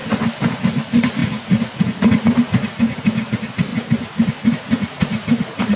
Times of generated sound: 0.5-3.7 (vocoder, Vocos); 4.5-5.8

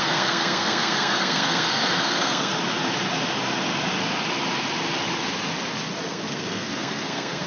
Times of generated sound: 0.0-2.5 (codec, SNAC); 6.1-7.5